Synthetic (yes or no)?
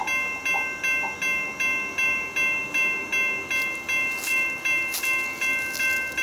no